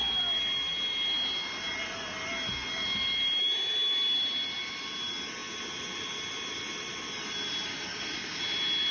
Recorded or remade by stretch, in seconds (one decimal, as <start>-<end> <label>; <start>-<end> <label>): 0.0-7.9 recorded; 7.9-8.4 remade; 8.4-8.9 recorded